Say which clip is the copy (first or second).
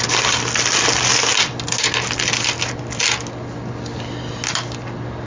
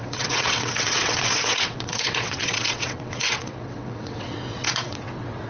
second